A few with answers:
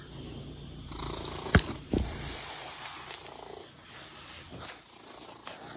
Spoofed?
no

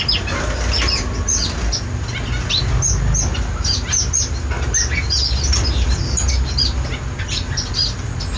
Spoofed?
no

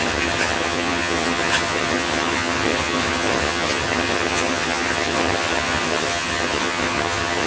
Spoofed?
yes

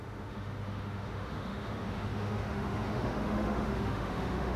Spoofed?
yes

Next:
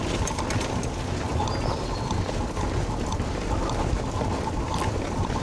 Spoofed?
no